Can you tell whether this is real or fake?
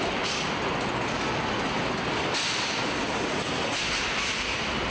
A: real